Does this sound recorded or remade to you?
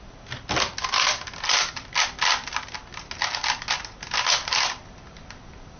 recorded